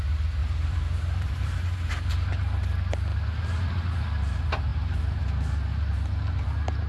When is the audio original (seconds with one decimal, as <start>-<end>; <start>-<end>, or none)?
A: 0.0-0.4; 1.9-4.7; 5.2-5.7; 6.5-6.9